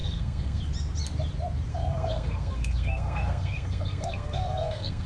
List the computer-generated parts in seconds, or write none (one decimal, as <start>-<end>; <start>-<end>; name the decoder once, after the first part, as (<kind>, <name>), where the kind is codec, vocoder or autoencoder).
0.0-0.6 (codec, SNAC); 1.7-5.1